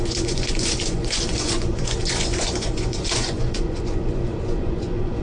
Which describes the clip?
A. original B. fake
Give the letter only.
B